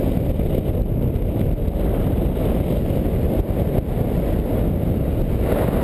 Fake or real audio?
real